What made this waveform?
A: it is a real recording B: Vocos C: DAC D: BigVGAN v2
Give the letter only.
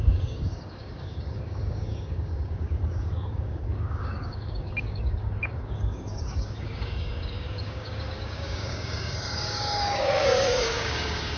C